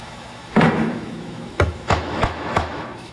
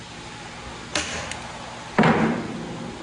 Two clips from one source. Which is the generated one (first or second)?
first